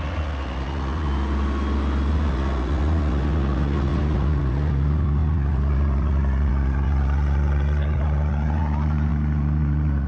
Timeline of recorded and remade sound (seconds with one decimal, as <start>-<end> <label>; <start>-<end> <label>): 0.0-1.1 remade; 1.1-2.1 recorded; 2.1-10.1 remade